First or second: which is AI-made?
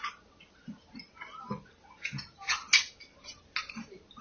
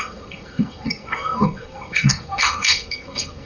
second